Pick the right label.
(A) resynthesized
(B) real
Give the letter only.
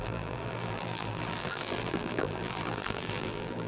A